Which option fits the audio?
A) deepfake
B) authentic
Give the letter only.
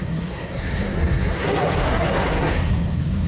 A